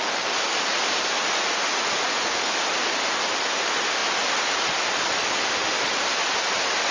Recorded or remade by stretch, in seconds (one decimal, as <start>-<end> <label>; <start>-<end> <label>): 0.0-1.7 recorded; 1.7-2.3 remade; 2.3-6.9 recorded